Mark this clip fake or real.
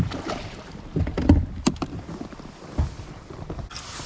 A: real